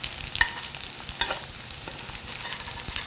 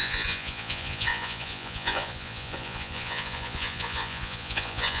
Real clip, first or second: first